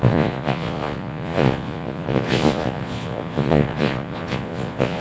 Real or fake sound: fake